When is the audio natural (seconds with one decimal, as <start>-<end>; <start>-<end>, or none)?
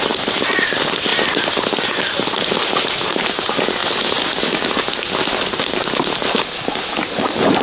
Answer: 0.0-7.6